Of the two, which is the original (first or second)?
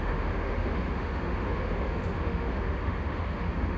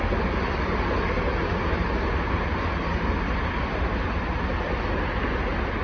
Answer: second